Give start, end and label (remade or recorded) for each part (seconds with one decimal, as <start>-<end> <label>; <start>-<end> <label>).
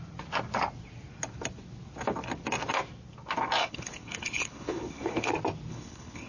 0.0-3.6 recorded; 3.6-5.3 remade; 5.3-5.7 recorded; 5.7-6.3 remade